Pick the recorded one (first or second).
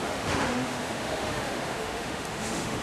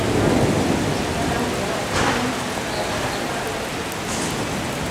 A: second